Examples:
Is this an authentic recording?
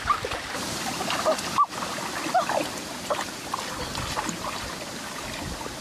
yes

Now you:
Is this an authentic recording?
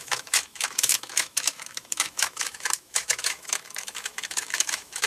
no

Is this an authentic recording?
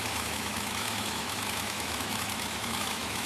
no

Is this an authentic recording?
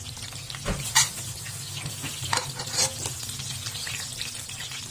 yes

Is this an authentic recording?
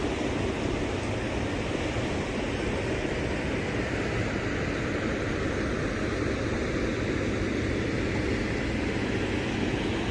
yes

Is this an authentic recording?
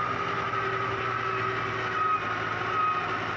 yes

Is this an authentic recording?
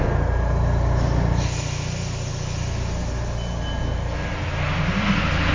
yes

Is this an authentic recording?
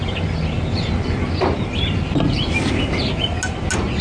yes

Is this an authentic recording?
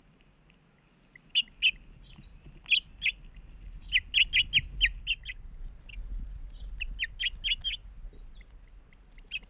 yes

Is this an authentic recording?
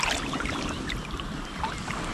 yes